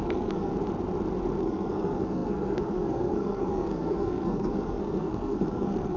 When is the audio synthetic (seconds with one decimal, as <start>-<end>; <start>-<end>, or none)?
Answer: 0.0-0.5; 1.4-6.0